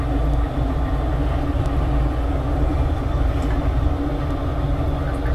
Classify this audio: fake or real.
fake